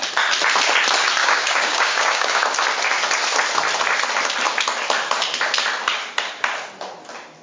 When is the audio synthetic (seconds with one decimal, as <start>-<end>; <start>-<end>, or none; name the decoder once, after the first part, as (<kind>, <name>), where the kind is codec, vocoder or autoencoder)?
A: 1.2-2.4 (codec, DAC)